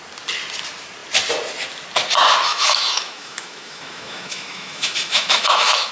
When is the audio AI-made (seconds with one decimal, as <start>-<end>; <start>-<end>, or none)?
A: 2.5-5.9